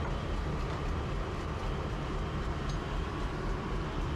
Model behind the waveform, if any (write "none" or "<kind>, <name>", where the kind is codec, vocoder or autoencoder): vocoder, BigVGAN v2